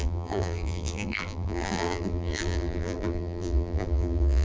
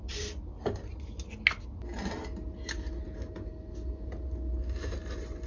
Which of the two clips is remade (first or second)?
first